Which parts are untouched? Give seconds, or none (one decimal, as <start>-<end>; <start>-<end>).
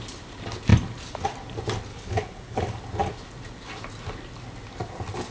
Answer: 0.0-1.9; 2.6-5.3